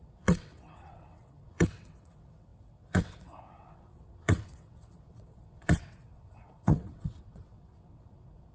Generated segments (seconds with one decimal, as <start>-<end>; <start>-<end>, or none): 0.0-8.5